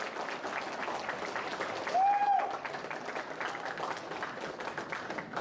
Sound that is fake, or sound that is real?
real